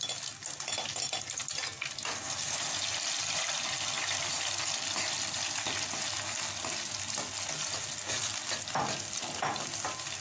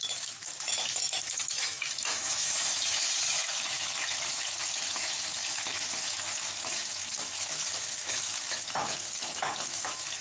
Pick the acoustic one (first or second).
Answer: first